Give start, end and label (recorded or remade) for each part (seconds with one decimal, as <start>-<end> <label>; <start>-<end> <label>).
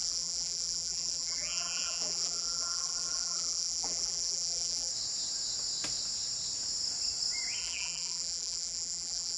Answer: 0.0-4.9 remade; 4.9-7.6 recorded; 7.6-9.4 remade